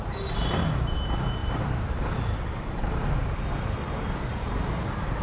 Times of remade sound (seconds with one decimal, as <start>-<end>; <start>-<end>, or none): 0.0-3.2; 4.3-5.2